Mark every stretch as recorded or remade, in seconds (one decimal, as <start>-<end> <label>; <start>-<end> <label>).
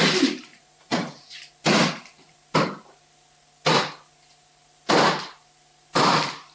0.0-0.5 recorded; 0.5-1.3 remade; 1.3-6.5 recorded